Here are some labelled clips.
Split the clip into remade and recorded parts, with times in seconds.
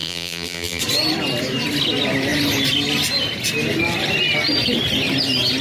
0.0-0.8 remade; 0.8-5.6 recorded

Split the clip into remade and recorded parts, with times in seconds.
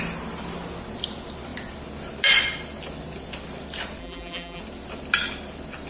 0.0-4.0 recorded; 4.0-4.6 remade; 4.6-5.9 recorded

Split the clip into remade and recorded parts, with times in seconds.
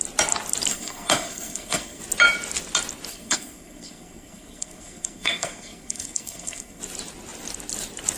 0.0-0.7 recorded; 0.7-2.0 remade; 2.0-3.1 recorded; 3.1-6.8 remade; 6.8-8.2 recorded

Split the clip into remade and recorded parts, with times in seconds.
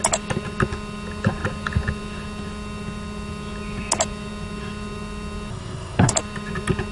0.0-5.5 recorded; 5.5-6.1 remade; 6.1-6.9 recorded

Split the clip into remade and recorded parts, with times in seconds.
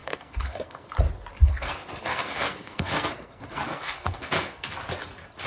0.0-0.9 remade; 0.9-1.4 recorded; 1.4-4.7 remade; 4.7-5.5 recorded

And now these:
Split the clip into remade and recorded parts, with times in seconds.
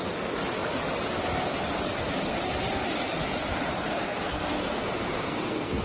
0.0-3.9 recorded; 3.9-5.8 remade